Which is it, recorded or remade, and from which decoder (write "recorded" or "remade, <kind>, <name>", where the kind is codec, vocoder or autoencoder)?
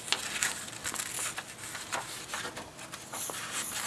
recorded